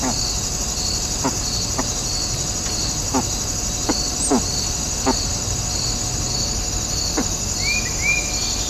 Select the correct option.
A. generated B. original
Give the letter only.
B